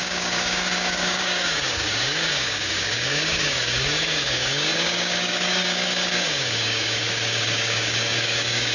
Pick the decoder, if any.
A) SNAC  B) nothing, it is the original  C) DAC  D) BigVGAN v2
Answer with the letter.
C